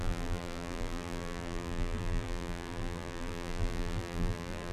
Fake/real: fake